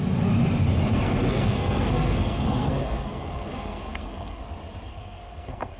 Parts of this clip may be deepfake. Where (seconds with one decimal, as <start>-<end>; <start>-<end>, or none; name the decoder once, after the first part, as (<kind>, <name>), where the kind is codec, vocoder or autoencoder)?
0.9-4.4 (codec, SNAC); 4.9-5.8